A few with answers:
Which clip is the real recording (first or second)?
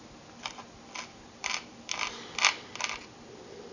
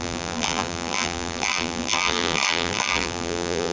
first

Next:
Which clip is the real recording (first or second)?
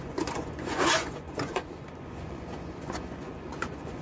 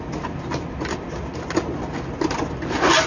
second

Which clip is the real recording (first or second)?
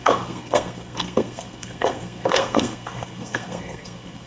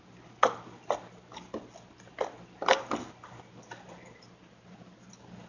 second